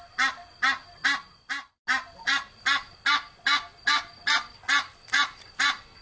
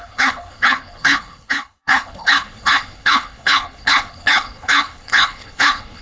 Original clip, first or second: first